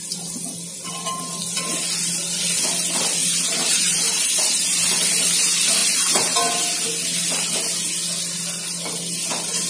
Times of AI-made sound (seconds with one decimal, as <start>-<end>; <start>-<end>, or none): 3.2-4.3; 5.8-6.5